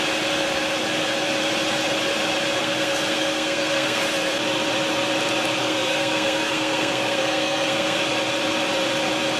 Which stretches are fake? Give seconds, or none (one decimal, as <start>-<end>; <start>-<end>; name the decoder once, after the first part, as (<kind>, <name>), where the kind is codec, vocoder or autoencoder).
2.6-4.0 (codec, SNAC); 5.6-8.0